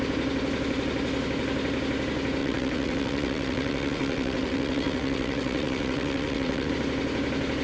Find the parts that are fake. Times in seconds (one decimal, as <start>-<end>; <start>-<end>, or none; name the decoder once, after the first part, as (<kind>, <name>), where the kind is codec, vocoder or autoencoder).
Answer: 2.4-6.7 (vocoder, WaveNeXt)